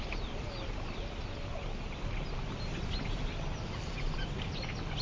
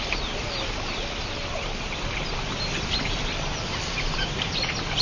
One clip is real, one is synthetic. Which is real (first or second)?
first